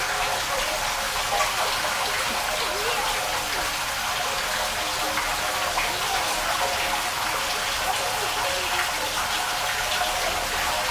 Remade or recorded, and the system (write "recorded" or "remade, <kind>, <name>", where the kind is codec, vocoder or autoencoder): recorded